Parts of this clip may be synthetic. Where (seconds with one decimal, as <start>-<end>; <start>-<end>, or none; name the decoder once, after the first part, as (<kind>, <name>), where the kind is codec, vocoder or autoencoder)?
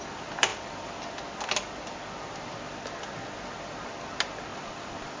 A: 4.5-5.2 (vocoder, BigVGAN v2)